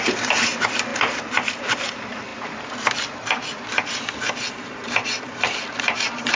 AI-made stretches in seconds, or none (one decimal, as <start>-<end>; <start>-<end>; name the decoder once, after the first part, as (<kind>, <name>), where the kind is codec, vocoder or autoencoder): 0.0-2.3 (vocoder, BigVGAN v2); 4.5-6.3